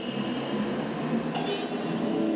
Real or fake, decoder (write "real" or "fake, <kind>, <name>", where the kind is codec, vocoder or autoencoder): real